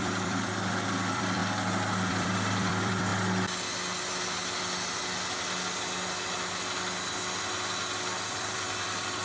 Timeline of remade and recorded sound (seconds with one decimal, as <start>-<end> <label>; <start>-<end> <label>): 0.0-1.4 remade; 1.4-2.1 recorded; 2.1-3.1 remade; 3.1-8.3 recorded; 8.3-9.2 remade